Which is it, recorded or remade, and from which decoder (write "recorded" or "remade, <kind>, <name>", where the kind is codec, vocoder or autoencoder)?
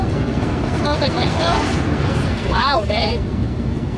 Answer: remade, codec, SNAC